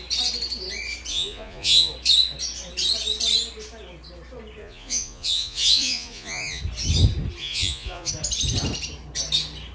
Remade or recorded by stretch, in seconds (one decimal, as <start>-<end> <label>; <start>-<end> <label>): 0.0-1.1 recorded; 1.1-1.9 remade; 1.9-4.6 recorded; 4.6-6.6 remade; 6.6-7.4 recorded; 7.4-8.1 remade; 8.1-9.7 recorded